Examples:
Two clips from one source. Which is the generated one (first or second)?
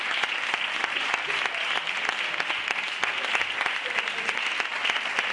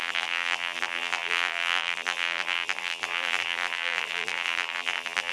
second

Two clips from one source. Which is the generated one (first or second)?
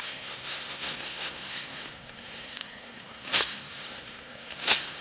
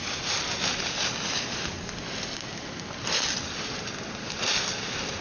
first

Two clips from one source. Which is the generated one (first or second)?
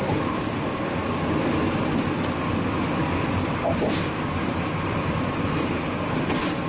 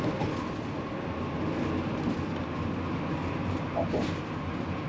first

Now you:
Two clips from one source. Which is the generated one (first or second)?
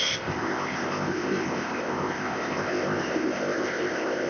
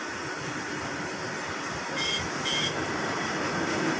first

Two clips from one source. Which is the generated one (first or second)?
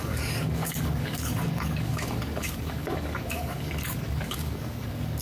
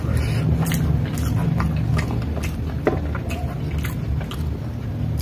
first